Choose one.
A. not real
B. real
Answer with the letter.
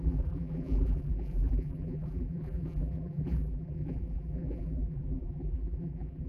A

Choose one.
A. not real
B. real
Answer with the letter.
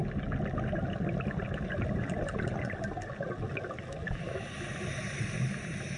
B